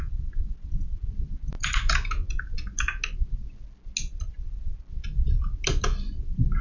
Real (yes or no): yes